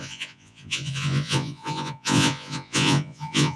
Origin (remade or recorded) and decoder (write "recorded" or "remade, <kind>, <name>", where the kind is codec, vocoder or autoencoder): remade, vocoder, Vocos